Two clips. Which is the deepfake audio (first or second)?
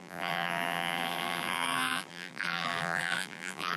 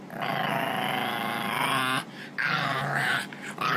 first